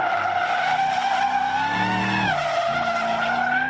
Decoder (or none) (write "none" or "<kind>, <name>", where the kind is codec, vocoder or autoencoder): none